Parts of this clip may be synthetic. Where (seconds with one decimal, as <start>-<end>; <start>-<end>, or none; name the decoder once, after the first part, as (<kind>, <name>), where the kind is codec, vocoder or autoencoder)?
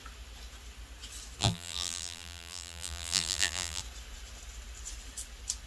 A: 1.4-3.8 (vocoder, BigVGAN v2)